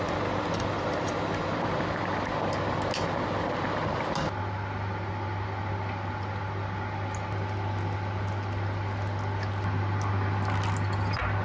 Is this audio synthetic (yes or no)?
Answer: no